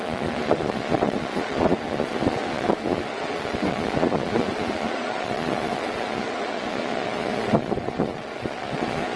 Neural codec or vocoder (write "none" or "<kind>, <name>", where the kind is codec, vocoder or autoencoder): vocoder, Vocos